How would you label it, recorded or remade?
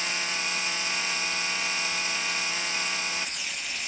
remade